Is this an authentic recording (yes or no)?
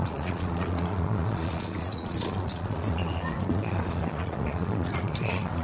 no